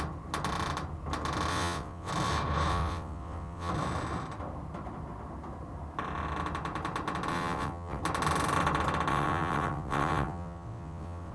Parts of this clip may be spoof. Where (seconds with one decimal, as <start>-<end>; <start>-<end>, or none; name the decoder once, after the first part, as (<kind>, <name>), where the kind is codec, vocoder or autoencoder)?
1.5-2.1 (vocoder, WaveNeXt); 2.7-3.7; 7.3-8.0; 9.1-11.3